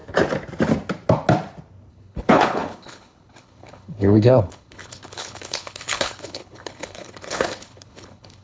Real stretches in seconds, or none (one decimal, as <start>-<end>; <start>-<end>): 0.0-1.9